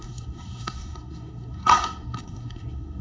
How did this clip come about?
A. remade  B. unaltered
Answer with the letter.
A